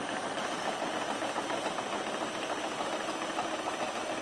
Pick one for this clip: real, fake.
real